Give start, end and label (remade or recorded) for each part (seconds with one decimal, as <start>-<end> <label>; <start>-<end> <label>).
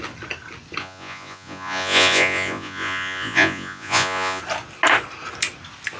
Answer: 0.0-0.8 recorded; 0.8-4.4 remade; 4.4-6.0 recorded